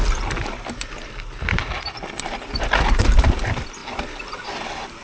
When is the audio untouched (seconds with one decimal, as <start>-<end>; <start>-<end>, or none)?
0.0-5.0